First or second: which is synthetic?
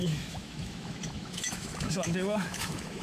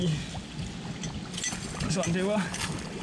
first